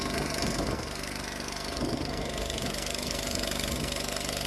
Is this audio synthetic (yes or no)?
yes